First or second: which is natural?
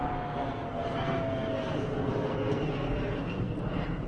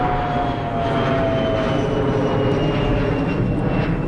second